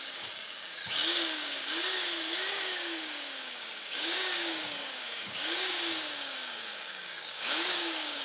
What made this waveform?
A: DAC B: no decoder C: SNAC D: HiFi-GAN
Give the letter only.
A